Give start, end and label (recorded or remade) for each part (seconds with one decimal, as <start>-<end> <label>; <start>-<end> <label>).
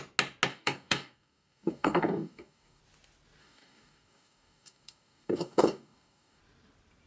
0.0-0.5 recorded; 0.5-2.8 remade; 2.8-3.4 recorded; 3.4-6.4 remade; 6.4-7.1 recorded